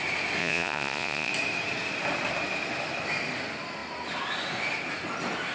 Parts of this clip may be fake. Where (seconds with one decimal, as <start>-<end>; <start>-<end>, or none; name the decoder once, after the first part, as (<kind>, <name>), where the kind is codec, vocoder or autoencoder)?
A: 0.4-1.3 (vocoder, Vocos)